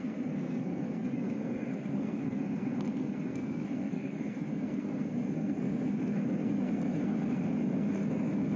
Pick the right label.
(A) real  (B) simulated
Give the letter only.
B